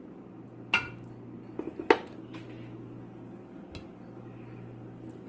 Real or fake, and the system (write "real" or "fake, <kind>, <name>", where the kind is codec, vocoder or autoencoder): real